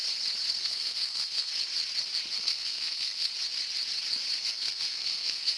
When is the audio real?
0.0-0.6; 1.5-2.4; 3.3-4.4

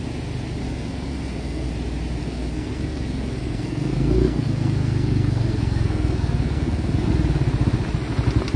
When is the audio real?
0.0-0.6; 1.7-2.2; 7.1-8.6

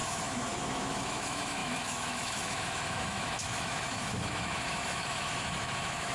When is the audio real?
none

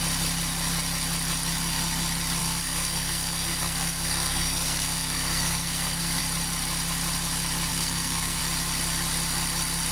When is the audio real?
0.0-2.4; 6.2-7.7; 8.4-9.9